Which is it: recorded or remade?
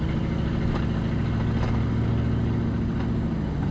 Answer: recorded